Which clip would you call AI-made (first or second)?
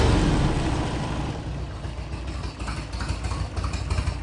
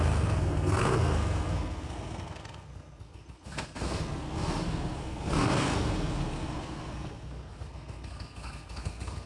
second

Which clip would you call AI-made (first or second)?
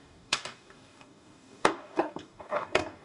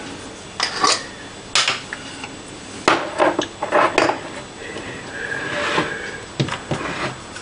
first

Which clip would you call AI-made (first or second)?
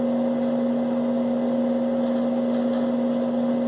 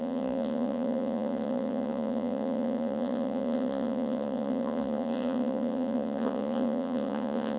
second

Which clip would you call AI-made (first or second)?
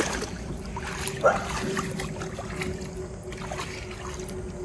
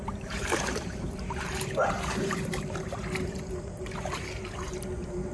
second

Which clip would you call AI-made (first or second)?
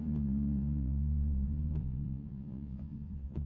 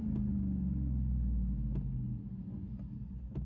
first